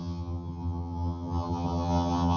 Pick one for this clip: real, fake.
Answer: fake